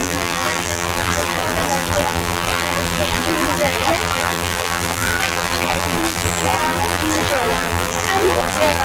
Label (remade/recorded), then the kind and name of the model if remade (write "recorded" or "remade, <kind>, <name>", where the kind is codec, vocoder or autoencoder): remade, vocoder, BigVGAN v2